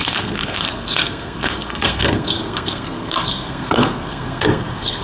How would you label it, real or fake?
fake